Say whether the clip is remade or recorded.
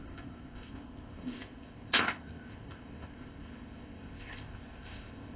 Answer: remade